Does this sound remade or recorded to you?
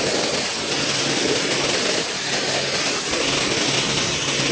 recorded